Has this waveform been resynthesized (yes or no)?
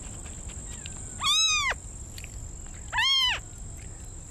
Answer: no